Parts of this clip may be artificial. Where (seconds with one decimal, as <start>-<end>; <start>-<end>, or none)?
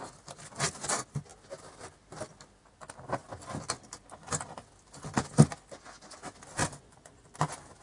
6.6-7.3